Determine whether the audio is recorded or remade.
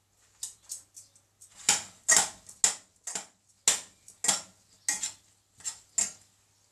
recorded